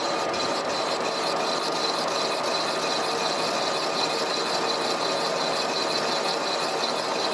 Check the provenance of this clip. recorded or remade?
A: recorded